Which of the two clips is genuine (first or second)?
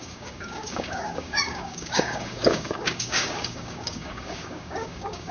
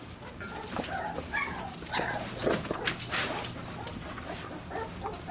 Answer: second